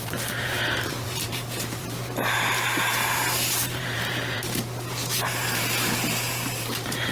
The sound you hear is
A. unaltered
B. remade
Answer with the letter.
B